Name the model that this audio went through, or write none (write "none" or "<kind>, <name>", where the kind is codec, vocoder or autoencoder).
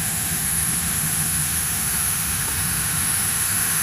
autoencoder, DAC-VAE